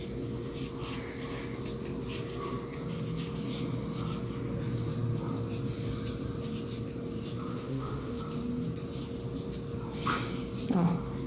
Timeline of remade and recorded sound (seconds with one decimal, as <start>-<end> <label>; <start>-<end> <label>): 0.0-7.5 recorded; 7.5-8.2 remade; 8.2-11.3 recorded